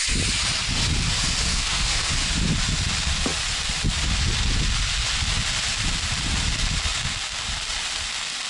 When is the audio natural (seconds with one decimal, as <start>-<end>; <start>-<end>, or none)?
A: 0.0-1.5; 2.1-8.5